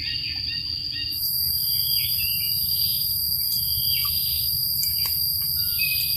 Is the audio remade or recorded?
recorded